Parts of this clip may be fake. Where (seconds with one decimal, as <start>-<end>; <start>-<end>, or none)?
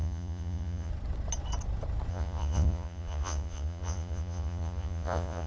0.0-0.9; 2.1-5.5